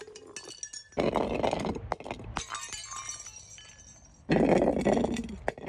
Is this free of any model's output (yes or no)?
yes